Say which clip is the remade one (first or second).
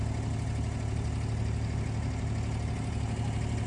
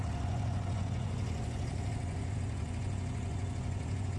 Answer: second